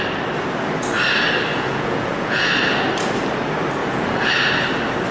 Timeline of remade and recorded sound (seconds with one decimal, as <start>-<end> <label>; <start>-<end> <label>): 0.0-1.5 recorded; 1.5-2.5 remade; 2.5-3.8 recorded; 3.8-4.3 remade; 4.3-5.1 recorded

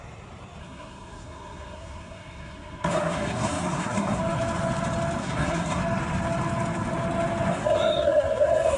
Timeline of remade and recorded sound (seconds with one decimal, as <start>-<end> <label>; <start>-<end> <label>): 0.0-0.6 recorded; 0.6-4.2 remade; 4.2-5.2 recorded; 5.2-5.8 remade; 5.8-7.5 recorded; 7.5-8.8 remade

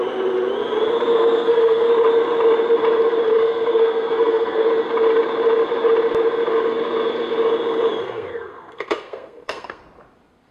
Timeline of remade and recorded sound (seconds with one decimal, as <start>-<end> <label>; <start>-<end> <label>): 0.0-1.1 recorded; 1.1-1.9 remade; 1.9-3.3 recorded; 3.3-4.7 remade; 4.7-8.0 recorded; 8.0-9.8 remade; 9.8-10.5 recorded

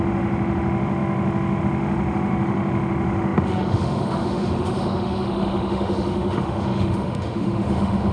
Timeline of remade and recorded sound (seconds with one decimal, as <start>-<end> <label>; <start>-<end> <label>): 0.0-8.1 remade

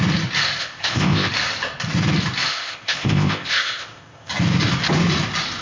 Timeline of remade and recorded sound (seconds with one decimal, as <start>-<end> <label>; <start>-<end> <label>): 0.0-0.6 recorded; 0.6-1.3 remade; 1.3-2.5 recorded; 2.5-4.3 remade; 4.3-5.6 recorded

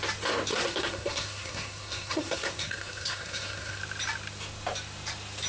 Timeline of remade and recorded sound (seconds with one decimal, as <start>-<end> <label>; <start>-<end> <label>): 0.0-0.5 recorded; 0.5-3.8 remade; 3.8-5.5 recorded

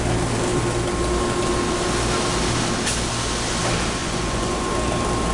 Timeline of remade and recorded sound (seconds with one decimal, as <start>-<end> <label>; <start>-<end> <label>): 0.0-4.0 recorded; 4.0-4.7 remade; 4.7-5.3 recorded

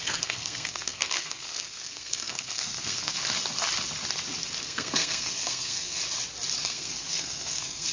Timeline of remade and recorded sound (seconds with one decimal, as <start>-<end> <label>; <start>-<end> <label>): 0.0-3.2 remade; 3.2-4.6 recorded; 4.6-6.0 remade; 6.0-6.6 recorded; 6.6-7.9 remade